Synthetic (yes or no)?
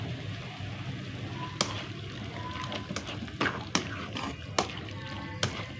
no